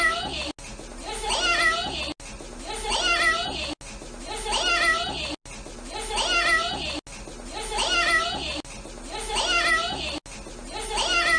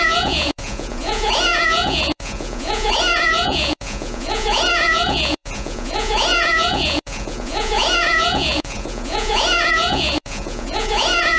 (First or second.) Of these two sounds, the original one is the first